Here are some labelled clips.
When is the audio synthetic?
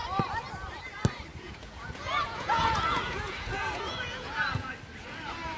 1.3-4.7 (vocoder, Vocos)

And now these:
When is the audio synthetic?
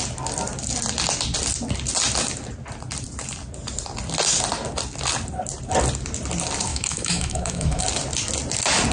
6.7-7.8 (autoencoder, DAC-VAE)